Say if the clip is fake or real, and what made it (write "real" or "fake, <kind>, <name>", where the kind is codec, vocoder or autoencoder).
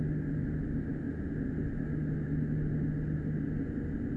real